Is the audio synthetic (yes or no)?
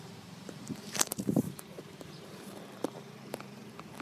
yes